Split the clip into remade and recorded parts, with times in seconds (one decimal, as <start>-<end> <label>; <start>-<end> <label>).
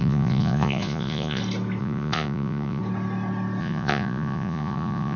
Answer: 0.0-1.4 remade; 1.4-1.8 recorded; 1.8-2.8 remade; 2.8-3.6 recorded; 3.6-5.2 remade